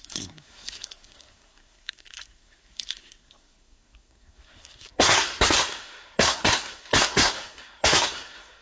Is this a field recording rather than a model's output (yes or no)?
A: no